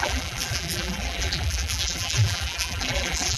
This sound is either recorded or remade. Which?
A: remade